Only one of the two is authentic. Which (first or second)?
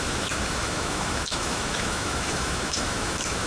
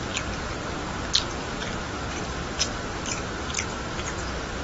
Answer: second